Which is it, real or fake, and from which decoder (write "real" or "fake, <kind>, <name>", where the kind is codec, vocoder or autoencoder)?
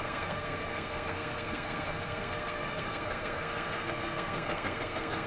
fake, codec, SNAC